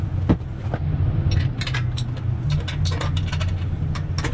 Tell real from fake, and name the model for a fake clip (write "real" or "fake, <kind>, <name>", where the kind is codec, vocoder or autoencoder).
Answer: real